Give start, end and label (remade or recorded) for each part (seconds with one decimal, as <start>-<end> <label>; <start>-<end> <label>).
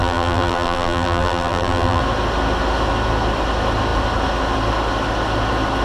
0.0-2.0 remade; 2.0-5.8 recorded